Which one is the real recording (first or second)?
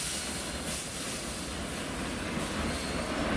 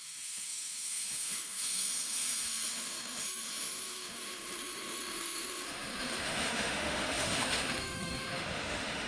first